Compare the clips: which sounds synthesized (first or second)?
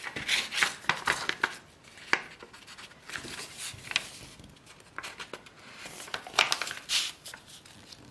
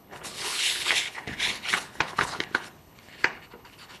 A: second